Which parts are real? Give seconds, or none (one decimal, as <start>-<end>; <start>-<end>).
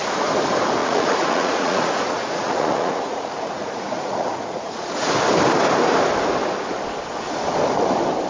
0.0-0.8; 5.1-8.3